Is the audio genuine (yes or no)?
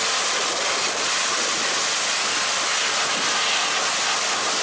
yes